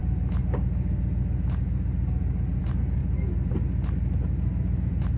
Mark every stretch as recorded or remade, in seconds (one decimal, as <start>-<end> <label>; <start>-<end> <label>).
0.0-5.2 recorded